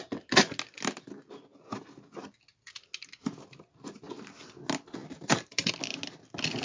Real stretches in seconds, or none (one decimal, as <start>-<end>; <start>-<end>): 0.0-3.2; 4.0-5.0; 5.7-6.6